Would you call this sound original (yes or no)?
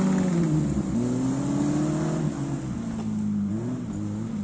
yes